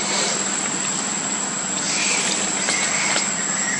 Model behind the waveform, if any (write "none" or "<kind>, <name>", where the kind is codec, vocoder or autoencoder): vocoder, BigVGAN v2